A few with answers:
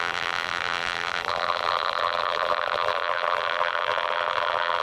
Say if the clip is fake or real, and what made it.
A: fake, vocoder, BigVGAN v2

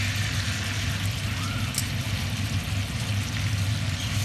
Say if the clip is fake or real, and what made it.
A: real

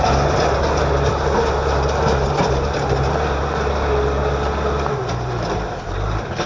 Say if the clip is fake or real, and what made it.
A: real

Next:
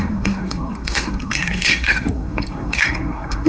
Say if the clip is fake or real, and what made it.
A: fake, codec, SNAC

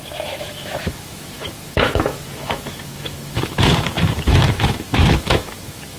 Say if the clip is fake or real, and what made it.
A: fake, autoencoder, DAC-VAE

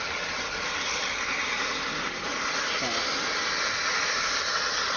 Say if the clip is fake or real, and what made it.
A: real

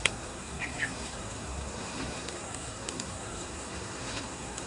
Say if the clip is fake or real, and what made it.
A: fake, codec, SNAC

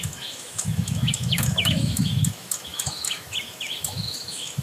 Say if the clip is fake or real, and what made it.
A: fake, autoencoder, DAC-VAE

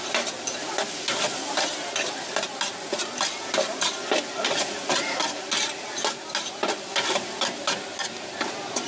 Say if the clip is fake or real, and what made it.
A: real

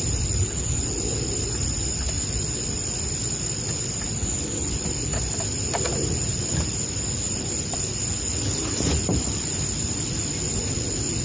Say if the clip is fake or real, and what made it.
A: real